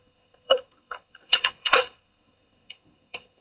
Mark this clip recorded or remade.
remade